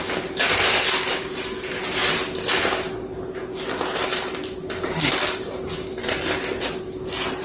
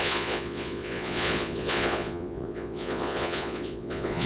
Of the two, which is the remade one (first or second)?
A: second